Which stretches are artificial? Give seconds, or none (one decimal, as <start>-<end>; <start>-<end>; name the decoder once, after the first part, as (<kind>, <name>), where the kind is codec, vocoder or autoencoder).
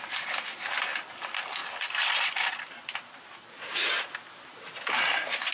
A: none